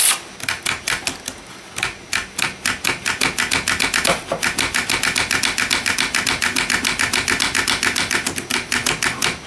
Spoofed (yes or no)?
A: no